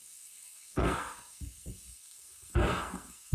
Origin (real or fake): fake